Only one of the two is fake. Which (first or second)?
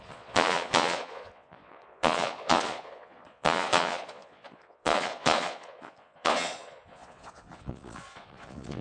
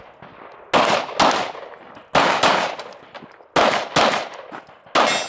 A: first